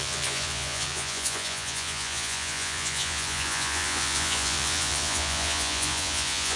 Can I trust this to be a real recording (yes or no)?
no